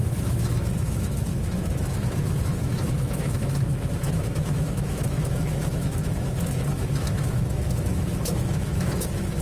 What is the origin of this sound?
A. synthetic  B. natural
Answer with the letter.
A